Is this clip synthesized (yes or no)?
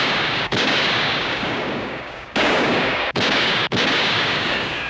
yes